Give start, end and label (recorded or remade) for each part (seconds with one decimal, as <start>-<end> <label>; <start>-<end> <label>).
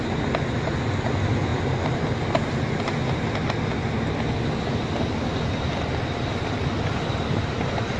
0.0-8.0 recorded